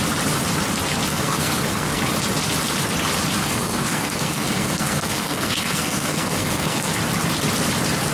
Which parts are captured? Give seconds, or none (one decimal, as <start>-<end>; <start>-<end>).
0.0-1.1; 2.0-3.4; 6.9-8.1